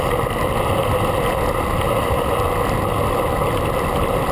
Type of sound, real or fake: real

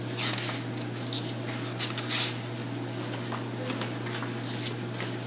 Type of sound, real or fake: real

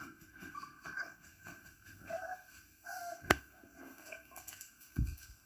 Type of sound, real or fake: fake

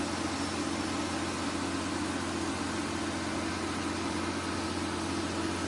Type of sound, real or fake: real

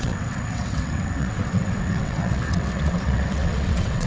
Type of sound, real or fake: fake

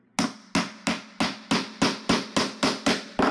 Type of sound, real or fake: real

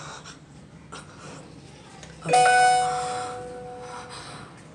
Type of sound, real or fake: real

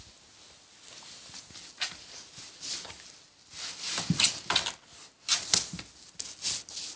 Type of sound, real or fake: real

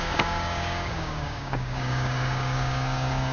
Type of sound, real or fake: fake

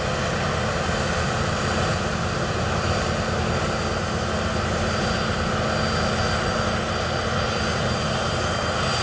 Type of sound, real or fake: real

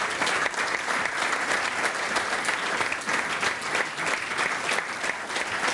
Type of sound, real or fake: real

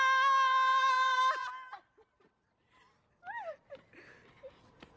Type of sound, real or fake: real